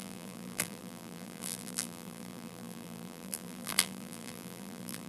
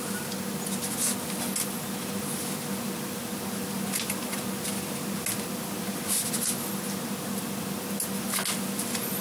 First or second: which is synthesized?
first